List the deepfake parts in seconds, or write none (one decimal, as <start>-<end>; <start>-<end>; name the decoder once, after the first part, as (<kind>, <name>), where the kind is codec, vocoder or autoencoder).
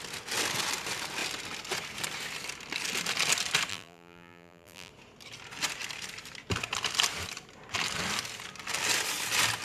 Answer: 3.7-4.9 (vocoder, BigVGAN v2)